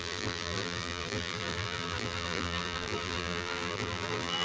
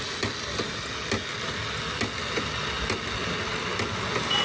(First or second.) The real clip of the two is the second